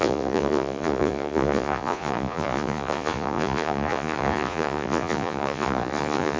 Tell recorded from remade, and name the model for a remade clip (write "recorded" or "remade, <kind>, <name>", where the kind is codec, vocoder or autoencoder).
remade, vocoder, Vocos